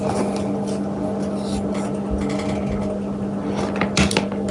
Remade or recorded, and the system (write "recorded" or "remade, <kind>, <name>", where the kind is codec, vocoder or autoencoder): recorded